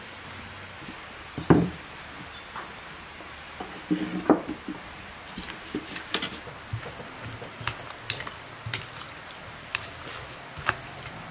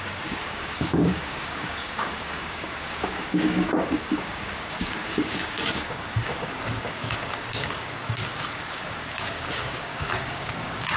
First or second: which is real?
first